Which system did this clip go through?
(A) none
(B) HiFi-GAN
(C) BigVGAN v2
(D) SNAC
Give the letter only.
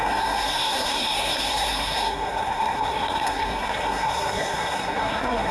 D